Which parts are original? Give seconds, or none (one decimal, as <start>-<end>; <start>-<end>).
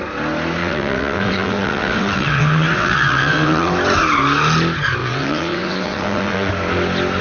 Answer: 0.0-0.6; 3.7-5.0; 6.5-7.2